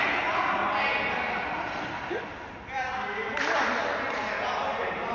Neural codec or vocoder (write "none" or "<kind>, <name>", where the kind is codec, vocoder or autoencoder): none